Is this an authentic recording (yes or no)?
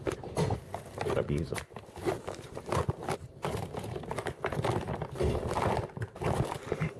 yes